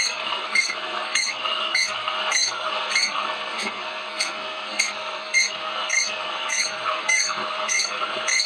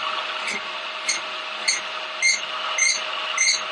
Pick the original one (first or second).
second